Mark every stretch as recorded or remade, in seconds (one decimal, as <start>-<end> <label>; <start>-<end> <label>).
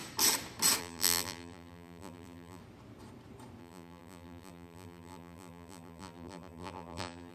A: 0.0-0.8 recorded; 0.8-2.6 remade; 2.6-3.6 recorded; 3.6-7.3 remade